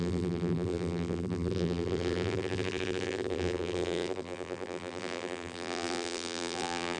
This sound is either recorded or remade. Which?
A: remade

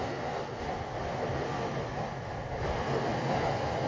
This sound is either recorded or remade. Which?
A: recorded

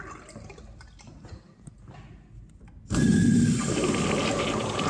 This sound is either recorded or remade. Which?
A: recorded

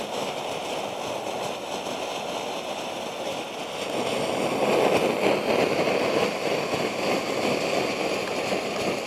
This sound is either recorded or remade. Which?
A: recorded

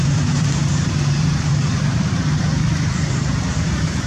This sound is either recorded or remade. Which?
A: remade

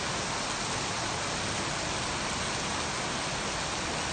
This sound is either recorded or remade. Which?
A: recorded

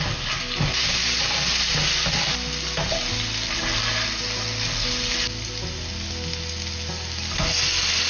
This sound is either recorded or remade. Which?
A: recorded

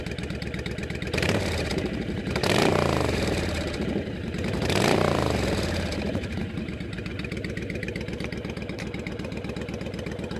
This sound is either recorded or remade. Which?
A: remade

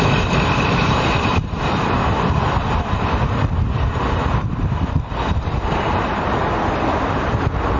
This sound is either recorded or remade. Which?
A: remade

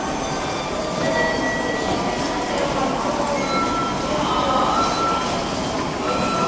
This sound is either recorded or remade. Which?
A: recorded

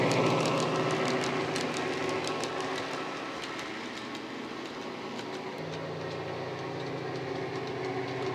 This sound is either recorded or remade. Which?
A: recorded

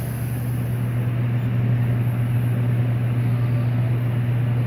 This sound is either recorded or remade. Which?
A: recorded